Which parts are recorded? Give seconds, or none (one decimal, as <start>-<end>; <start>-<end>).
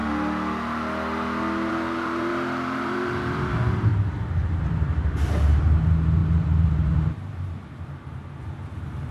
0.0-1.7; 3.9-4.6